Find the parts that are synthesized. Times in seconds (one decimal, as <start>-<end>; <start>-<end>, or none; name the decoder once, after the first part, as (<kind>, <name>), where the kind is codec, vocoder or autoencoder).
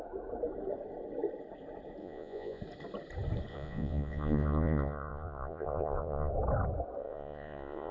2.0-2.6 (vocoder, Vocos); 3.5-6.3; 7.0-7.9